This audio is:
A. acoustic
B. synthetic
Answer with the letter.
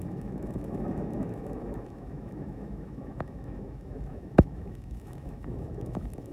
B